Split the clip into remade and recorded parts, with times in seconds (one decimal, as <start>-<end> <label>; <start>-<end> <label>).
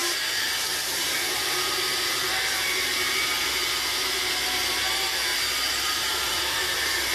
0.0-7.1 remade